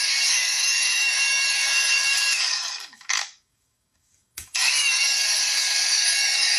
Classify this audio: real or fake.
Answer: fake